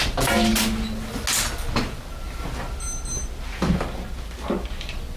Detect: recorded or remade recorded